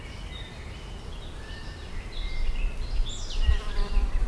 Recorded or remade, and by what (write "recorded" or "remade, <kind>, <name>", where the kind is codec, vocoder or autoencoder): recorded